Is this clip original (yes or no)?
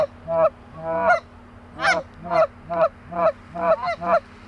yes